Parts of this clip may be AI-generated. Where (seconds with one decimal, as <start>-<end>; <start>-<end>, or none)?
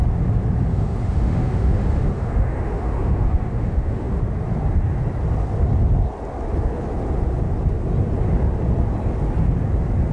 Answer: 0.7-4.2